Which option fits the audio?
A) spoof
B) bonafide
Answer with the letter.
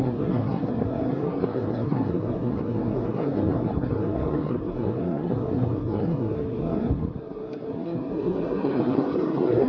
A